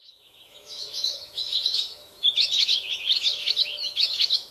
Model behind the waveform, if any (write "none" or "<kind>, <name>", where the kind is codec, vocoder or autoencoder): autoencoder, DAC-VAE